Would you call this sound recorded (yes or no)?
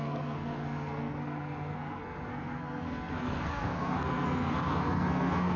no